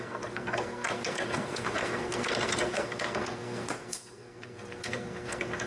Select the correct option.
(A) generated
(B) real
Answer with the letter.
A